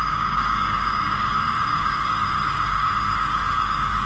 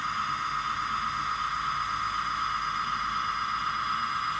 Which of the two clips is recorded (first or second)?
second